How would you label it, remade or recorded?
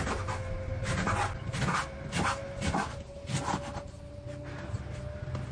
recorded